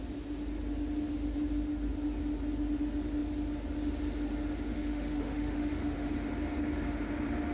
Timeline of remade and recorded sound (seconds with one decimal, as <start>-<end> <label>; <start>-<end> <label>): 0.0-4.7 recorded; 4.7-6.1 remade; 6.1-7.5 recorded